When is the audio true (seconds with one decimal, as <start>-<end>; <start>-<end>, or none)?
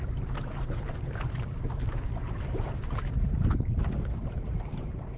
none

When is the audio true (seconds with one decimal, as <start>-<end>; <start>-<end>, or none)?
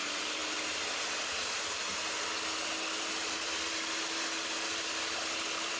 0.4-3.2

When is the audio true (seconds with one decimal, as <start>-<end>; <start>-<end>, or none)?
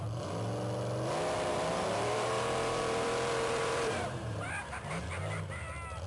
0.0-1.5; 4.5-6.1